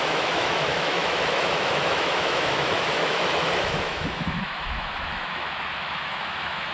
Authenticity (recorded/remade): remade